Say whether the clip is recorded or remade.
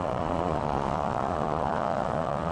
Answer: remade